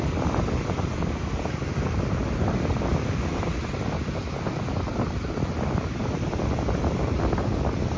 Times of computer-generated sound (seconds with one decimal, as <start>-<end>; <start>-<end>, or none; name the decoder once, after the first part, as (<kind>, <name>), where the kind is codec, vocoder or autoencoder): 0.0-1.2 (vocoder, BigVGAN v2); 2.8-8.0

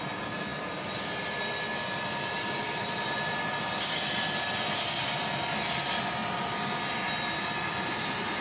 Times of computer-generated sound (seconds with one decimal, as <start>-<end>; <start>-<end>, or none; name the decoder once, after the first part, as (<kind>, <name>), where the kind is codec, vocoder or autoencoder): 0.5-4.1 (vocoder, BigVGAN v2); 6.2-8.0

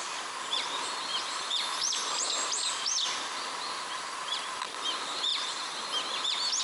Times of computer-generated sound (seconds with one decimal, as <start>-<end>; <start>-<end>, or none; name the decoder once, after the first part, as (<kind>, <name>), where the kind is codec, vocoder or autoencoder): 0.0-1.1 (vocoder, BigVGAN v2); 1.9-5.3

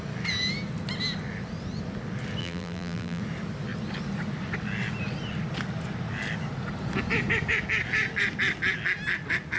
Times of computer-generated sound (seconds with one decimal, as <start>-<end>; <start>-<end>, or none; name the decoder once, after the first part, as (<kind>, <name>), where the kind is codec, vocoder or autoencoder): 2.4-3.2 (vocoder, BigVGAN v2)